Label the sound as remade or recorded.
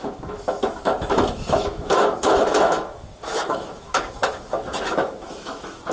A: remade